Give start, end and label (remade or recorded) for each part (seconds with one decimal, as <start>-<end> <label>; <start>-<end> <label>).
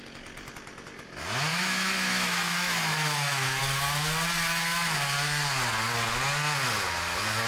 0.0-1.5 recorded; 1.5-3.6 remade; 3.6-7.5 recorded